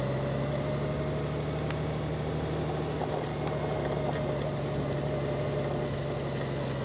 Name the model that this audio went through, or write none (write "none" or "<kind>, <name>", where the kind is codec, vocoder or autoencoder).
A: none